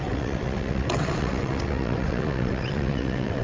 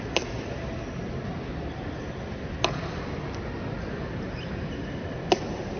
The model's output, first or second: first